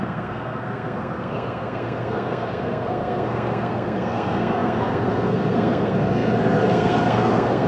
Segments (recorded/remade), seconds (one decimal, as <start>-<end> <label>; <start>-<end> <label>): 0.0-7.7 remade